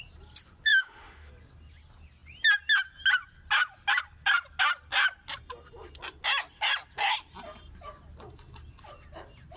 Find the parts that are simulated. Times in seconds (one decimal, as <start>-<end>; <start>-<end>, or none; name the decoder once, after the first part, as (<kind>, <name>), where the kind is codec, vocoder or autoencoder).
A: 0.7-1.3 (autoencoder, DAC-VAE)